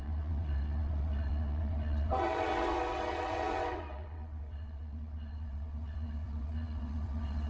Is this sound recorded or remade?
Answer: remade